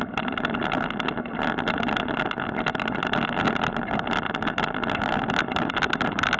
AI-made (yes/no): no